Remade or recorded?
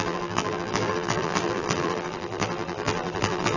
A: remade